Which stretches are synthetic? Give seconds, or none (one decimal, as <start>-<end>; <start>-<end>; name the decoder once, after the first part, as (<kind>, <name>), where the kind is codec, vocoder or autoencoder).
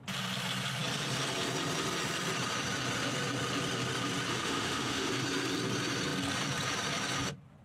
4.3-5.1 (autoencoder, DAC-VAE)